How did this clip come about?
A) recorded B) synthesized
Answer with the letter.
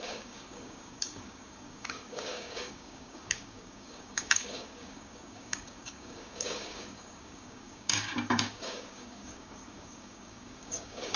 B